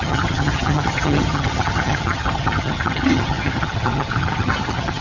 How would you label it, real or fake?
fake